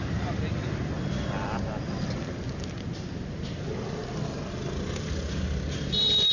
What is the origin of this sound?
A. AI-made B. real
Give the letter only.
B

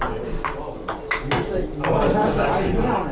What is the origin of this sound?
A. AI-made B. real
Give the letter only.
B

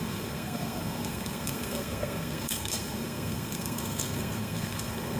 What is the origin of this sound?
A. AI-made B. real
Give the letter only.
A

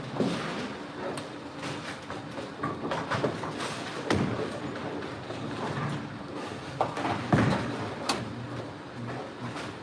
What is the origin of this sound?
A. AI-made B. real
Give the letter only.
B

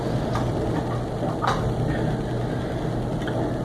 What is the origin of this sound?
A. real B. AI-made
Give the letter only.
A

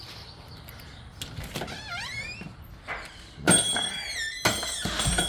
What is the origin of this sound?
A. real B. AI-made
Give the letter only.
A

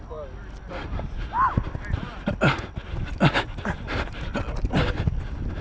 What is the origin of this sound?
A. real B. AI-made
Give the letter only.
A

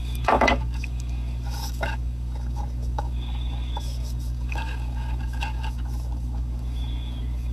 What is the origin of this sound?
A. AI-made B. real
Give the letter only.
A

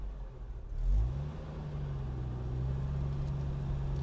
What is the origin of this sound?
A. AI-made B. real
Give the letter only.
B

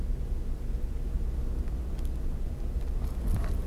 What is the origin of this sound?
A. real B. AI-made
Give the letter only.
A